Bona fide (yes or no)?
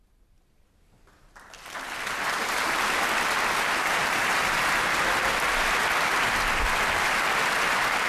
yes